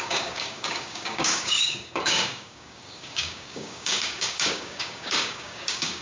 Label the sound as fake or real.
fake